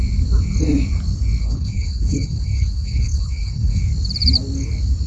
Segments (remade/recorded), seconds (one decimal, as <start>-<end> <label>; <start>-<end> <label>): 0.0-1.4 recorded; 1.4-3.8 remade; 3.8-5.1 recorded